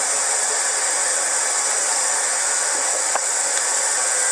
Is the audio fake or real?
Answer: real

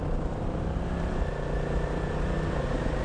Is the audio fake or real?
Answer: real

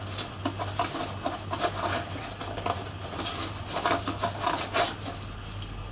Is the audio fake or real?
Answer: real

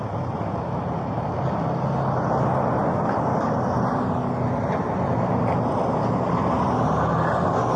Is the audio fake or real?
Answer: real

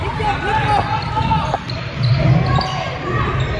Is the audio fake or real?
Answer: real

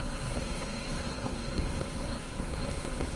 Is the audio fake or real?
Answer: fake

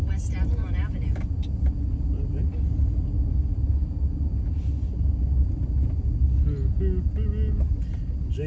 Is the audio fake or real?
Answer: real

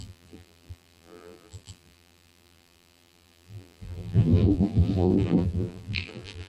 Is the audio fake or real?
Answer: fake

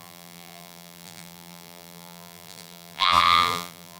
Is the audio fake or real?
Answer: fake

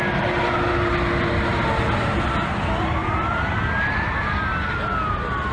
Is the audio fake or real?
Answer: real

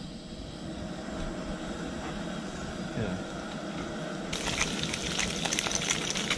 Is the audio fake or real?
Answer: real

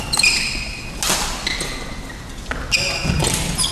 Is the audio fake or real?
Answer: real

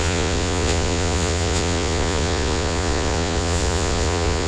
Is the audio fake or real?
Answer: fake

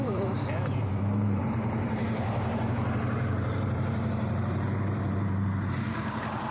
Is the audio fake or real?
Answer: fake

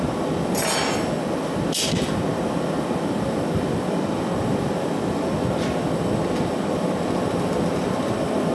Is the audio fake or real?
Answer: real